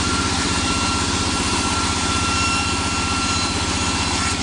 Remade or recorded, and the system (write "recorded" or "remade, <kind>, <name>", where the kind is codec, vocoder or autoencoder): remade, vocoder, BigVGAN v2